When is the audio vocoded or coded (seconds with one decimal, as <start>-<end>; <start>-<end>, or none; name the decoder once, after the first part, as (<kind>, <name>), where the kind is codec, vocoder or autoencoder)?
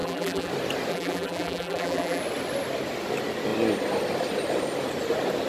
0.0-0.5 (vocoder, BigVGAN v2); 0.9-2.2